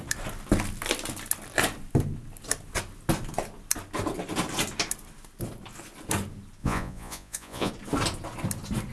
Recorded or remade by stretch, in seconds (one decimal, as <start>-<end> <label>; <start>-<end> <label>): 0.0-6.6 recorded; 6.6-7.7 remade; 7.7-8.9 recorded